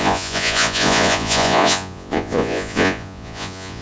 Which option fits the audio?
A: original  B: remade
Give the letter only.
B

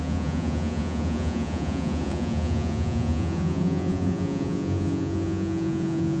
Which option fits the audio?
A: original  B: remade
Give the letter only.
B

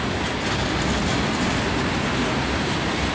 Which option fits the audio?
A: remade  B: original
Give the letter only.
B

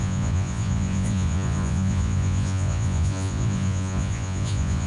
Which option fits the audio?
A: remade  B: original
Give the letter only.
A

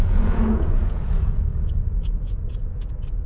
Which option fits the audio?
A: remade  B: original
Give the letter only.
A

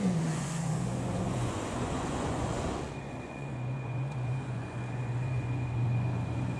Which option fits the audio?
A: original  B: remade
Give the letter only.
B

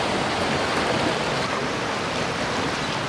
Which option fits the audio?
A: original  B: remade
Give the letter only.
A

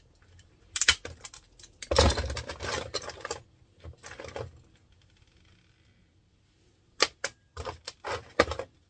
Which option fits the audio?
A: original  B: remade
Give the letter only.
A